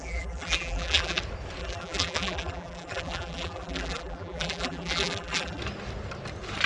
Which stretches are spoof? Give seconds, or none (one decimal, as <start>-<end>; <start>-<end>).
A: 0.0-1.2; 1.6-5.6